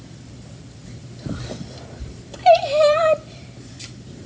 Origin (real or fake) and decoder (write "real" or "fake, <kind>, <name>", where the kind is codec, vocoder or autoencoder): fake, vocoder, BigVGAN v2